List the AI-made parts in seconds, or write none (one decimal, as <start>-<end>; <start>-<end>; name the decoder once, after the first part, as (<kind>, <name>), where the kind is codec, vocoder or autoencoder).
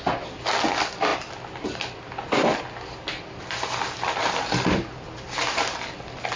none